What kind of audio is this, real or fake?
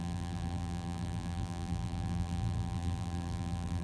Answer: fake